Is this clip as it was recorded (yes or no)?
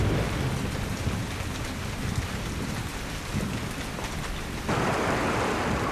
yes